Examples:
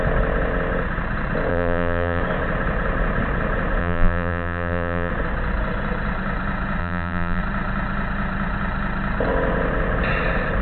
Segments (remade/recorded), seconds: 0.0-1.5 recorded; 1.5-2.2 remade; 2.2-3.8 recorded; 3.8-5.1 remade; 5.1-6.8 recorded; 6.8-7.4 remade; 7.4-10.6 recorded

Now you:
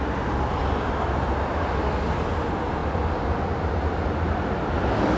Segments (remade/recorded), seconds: 0.0-5.2 recorded

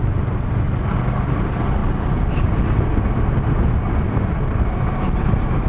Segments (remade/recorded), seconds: 0.0-5.7 recorded

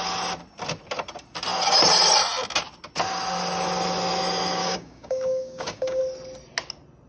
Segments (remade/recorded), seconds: 0.0-4.6 recorded; 4.6-6.0 remade; 6.0-7.1 recorded

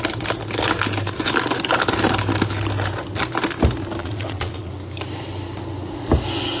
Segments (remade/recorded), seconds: 0.0-4.0 recorded; 4.0-4.7 remade; 4.7-6.6 recorded

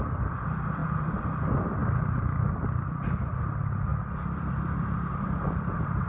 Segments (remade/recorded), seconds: 0.0-6.1 recorded